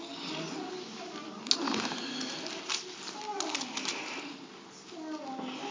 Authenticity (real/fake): real